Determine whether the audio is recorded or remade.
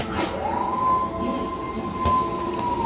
recorded